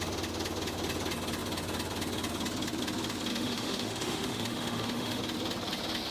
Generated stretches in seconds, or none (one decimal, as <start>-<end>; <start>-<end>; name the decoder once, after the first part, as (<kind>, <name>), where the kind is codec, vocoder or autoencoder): 3.3-5.2 (autoencoder, DAC-VAE)

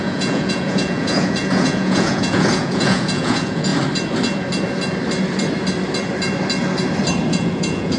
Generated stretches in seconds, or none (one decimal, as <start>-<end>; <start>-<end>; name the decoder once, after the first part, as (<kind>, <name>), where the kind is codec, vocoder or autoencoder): 0.0-3.7 (vocoder, Vocos); 7.3-8.0

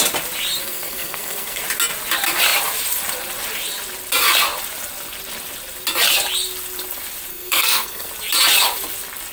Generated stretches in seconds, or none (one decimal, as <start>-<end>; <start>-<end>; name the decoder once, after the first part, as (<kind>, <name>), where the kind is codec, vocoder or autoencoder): 0.6-1.6 (codec, SNAC); 7.3-8.1

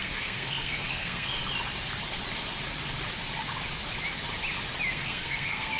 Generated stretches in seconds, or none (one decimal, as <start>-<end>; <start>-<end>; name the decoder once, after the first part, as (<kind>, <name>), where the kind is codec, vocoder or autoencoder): 0.0-1.4 (codec, SNAC); 4.9-5.8

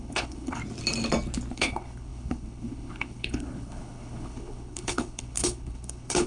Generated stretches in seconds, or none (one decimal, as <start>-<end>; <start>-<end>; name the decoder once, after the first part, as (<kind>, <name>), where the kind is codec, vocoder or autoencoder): 0.0-0.6 (codec, HILCodec); 1.5-6.3

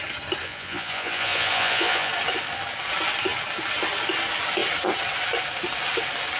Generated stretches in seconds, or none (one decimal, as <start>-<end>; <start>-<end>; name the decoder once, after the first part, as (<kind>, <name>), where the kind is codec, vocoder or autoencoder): 0.4-2.1 (vocoder, Vocos)

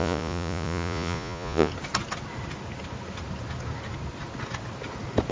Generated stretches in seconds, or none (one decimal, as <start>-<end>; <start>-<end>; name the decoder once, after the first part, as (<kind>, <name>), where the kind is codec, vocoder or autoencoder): 0.0-1.7 (vocoder, Vocos)

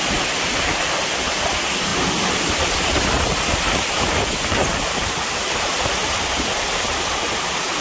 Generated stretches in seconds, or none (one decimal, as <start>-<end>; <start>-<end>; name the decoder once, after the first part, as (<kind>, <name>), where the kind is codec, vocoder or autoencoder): none